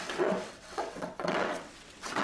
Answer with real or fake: fake